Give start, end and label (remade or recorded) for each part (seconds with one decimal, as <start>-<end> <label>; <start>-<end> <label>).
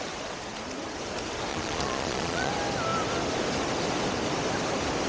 0.0-1.5 recorded; 1.5-2.5 remade; 2.5-5.1 recorded